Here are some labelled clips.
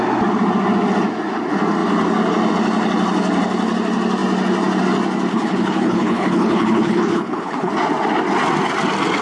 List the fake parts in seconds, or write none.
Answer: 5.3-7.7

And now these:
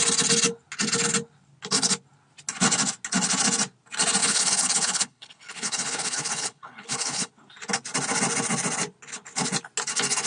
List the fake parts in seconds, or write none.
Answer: 4.2-7.3